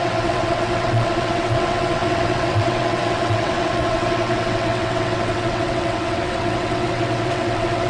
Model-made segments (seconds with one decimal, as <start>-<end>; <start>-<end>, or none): 0.0-7.9